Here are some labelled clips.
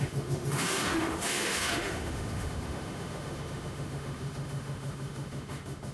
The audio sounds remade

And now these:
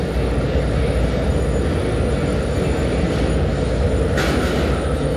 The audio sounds recorded